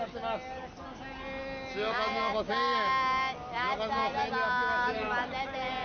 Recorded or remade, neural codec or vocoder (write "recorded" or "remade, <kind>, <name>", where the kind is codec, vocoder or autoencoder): recorded